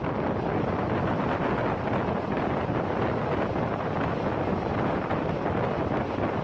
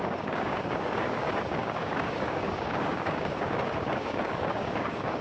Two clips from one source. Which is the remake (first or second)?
second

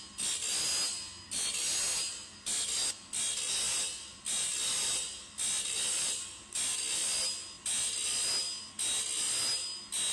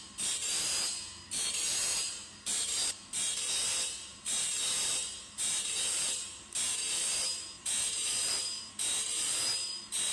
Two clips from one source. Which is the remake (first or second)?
second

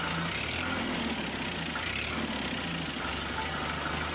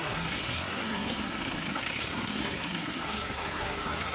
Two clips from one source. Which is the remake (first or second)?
second